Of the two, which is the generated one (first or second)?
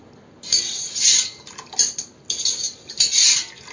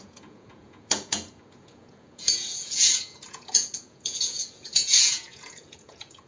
second